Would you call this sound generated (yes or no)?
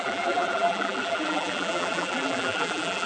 yes